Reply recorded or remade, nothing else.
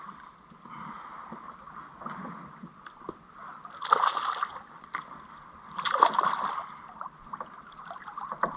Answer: recorded